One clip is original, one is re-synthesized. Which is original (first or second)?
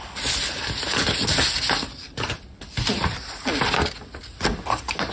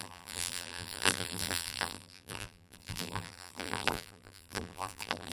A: first